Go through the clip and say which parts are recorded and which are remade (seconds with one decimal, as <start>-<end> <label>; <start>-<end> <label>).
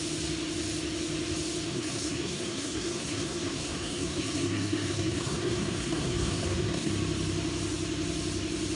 0.0-1.7 recorded; 1.7-6.9 remade; 6.9-8.8 recorded